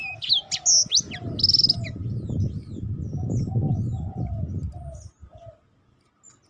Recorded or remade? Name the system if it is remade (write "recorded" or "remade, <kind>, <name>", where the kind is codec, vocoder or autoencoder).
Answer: recorded